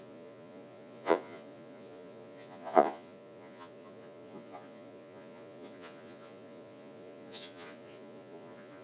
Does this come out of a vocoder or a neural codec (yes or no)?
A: yes